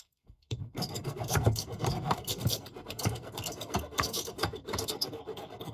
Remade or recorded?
remade